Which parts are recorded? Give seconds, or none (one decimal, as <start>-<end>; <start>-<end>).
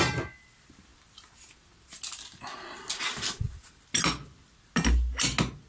0.0-5.7